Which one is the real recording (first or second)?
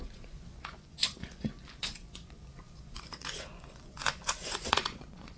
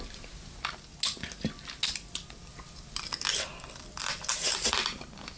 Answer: second